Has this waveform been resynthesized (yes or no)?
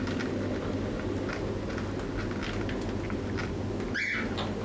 no